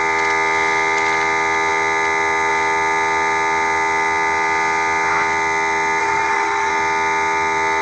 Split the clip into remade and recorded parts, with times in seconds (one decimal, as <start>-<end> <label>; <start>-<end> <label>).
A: 0.0-6.0 recorded; 6.0-6.7 remade; 6.7-7.8 recorded